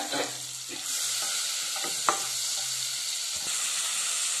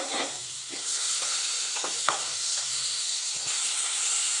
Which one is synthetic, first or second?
second